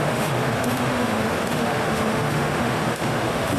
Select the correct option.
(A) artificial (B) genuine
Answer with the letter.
A